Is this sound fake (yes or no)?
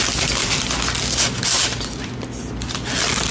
no